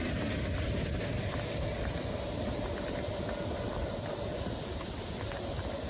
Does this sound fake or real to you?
real